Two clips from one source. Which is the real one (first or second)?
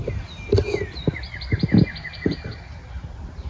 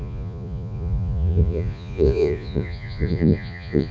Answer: first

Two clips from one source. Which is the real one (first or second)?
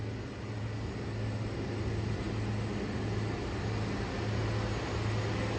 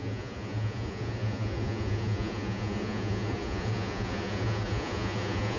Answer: first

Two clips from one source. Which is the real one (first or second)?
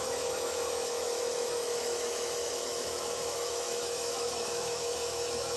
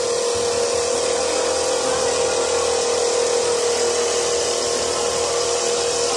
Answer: second